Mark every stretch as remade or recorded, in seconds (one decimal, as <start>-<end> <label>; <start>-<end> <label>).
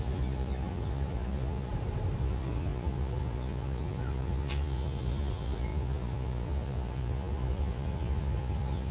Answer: 0.0-1.7 remade; 1.7-2.2 recorded; 2.2-8.9 remade